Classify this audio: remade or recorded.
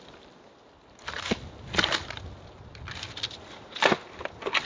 recorded